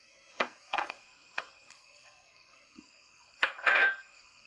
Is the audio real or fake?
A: fake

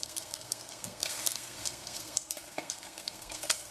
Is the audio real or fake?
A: fake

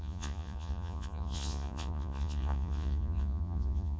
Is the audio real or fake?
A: fake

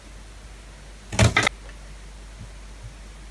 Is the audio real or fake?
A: real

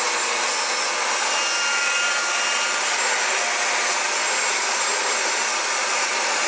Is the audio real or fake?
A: real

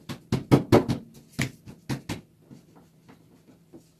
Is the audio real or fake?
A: real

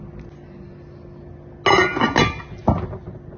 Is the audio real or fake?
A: real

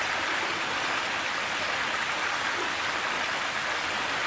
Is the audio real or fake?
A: real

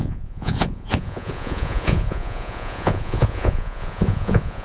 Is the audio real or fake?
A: fake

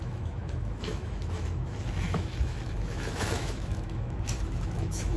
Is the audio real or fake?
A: fake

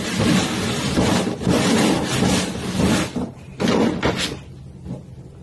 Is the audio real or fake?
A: real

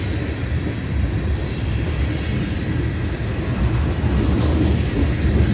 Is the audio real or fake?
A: real